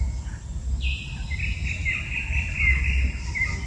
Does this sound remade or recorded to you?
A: recorded